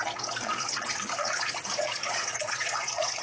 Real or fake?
fake